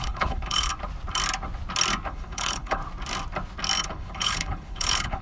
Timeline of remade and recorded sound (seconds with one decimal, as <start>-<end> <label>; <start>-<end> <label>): 0.0-0.7 remade; 0.7-2.1 recorded; 2.1-2.8 remade; 2.8-3.8 recorded; 3.8-5.2 remade